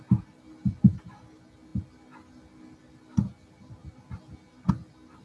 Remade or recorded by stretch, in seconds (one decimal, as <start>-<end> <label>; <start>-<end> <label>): 0.0-5.2 recorded